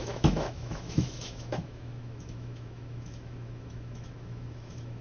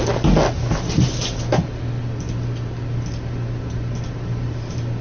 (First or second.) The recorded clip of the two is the second